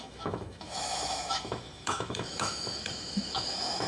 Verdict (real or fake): fake